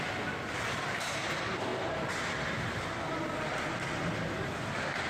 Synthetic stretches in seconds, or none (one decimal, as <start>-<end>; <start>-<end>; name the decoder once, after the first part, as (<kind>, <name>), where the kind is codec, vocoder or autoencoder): none